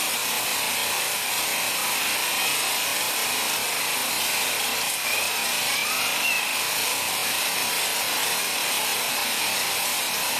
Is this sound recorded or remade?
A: recorded